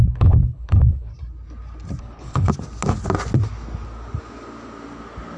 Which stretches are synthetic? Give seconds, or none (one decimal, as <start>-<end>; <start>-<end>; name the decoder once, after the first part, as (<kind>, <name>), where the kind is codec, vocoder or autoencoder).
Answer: 0.0-1.1 (codec, HILCodec); 2.0-2.5